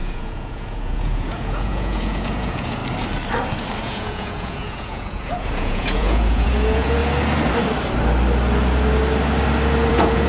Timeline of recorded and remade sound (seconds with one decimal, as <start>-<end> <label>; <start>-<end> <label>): 0.0-2.8 remade; 2.8-3.8 recorded; 3.8-7.0 remade; 7.0-9.9 recorded; 9.9-10.3 remade